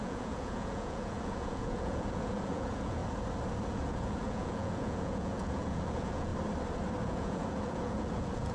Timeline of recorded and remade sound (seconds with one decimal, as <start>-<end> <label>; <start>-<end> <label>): 0.0-3.0 remade; 3.0-3.7 recorded; 3.7-6.3 remade; 6.3-7.0 recorded; 7.0-8.5 remade